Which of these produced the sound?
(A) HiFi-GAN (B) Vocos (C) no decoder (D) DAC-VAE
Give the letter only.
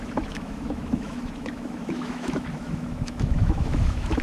D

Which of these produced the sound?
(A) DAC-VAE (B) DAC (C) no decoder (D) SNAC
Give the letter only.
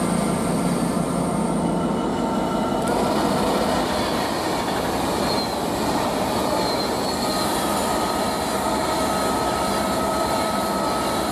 C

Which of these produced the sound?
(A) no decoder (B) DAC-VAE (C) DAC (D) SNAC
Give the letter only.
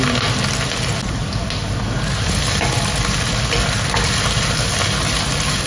A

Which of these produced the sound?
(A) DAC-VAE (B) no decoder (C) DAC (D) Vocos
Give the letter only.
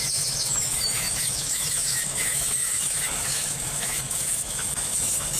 A